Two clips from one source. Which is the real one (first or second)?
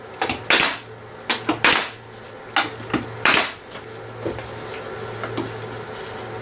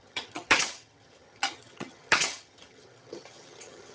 first